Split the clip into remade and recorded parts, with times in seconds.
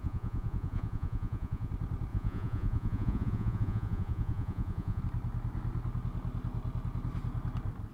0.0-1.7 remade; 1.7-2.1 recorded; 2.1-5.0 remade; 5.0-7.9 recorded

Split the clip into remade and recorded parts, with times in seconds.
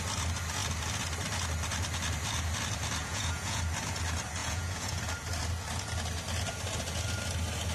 0.0-3.0 recorded; 3.0-3.6 remade; 3.6-4.4 recorded; 4.4-5.0 remade; 5.0-7.7 recorded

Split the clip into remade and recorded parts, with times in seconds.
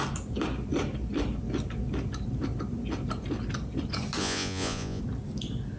0.0-4.2 recorded; 4.2-5.0 remade; 5.0-5.8 recorded